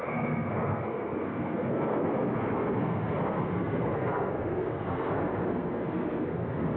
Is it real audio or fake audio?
fake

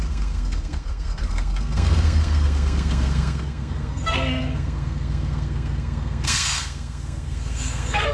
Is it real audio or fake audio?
fake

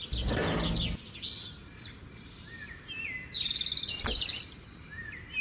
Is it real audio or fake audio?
real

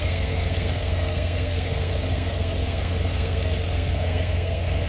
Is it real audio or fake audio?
fake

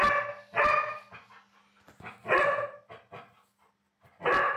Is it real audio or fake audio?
real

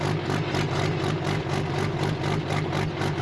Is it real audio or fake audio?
real